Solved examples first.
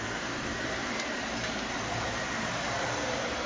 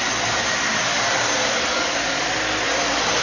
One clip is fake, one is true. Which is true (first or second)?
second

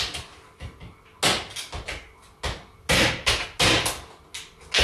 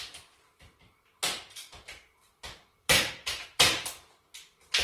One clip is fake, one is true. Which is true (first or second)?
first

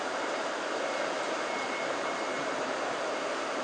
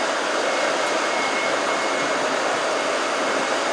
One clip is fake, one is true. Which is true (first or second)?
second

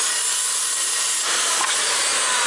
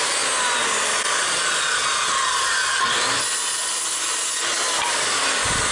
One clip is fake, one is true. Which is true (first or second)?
second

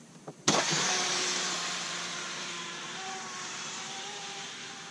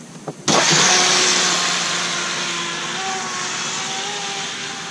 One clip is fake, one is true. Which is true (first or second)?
second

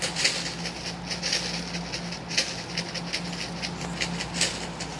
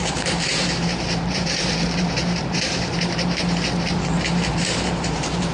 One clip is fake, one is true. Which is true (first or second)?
first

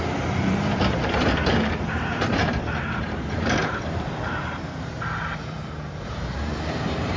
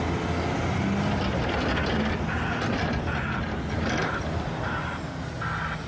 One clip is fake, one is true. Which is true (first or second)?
second